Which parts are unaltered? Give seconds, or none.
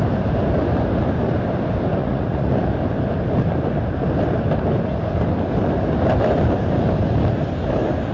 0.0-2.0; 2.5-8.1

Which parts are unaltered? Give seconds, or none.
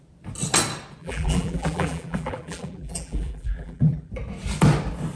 0.0-1.0; 4.1-5.2